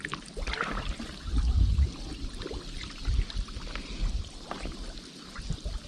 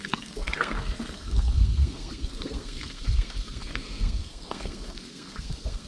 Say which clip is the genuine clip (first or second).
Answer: first